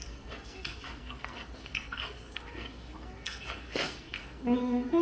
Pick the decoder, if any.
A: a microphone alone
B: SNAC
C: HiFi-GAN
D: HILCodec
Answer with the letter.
B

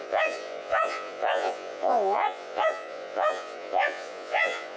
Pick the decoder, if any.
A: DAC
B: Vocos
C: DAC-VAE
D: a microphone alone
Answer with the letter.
B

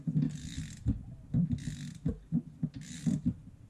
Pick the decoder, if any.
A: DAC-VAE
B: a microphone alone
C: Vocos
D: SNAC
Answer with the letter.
B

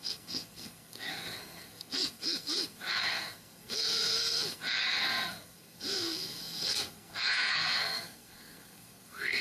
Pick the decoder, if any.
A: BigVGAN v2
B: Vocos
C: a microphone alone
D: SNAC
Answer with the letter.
D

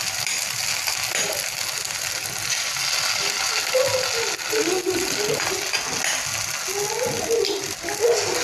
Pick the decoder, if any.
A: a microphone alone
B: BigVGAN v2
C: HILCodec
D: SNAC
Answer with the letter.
A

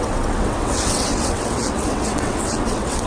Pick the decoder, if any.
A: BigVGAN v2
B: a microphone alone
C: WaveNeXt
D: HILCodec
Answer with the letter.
C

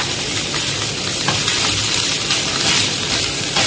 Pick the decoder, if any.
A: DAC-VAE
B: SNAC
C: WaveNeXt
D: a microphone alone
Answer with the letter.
D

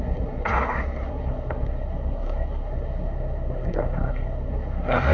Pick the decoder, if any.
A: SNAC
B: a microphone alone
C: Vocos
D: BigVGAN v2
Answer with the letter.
A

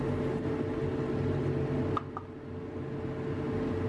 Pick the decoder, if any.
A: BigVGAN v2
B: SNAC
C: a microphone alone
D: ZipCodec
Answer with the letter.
C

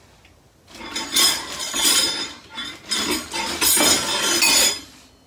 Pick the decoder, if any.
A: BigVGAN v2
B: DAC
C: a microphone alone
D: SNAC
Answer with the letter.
C